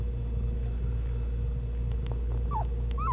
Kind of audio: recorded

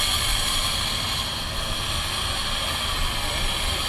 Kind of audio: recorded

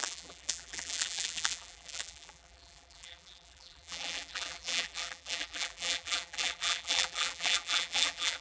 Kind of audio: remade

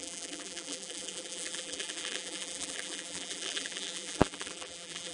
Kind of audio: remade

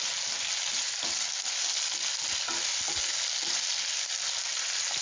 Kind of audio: recorded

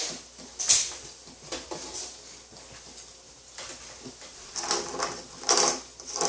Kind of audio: recorded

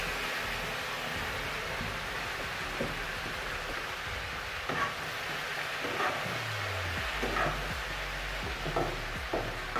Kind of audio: recorded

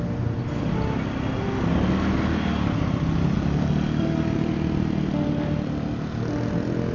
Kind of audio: recorded